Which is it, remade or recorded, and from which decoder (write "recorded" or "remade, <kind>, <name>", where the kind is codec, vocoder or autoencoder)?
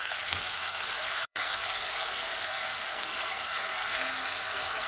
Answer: remade, codec, SNAC